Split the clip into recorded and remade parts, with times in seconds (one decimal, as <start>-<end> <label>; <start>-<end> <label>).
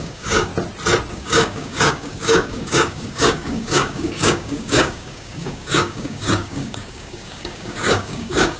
0.0-0.5 remade; 0.5-1.1 recorded; 1.1-8.6 remade